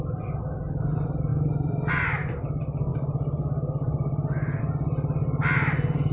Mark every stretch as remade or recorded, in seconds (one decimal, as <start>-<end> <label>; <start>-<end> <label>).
0.0-1.3 recorded; 1.3-1.9 remade; 1.9-6.1 recorded